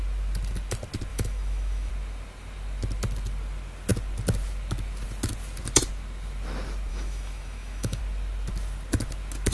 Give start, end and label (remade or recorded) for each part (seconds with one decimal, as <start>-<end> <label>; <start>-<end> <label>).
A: 0.0-1.1 recorded; 1.1-1.9 remade; 1.9-6.9 recorded; 6.9-8.0 remade; 8.0-9.5 recorded